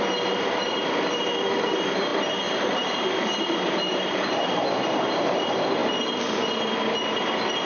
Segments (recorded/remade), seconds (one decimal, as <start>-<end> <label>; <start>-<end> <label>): 0.0-5.8 remade; 5.8-7.7 recorded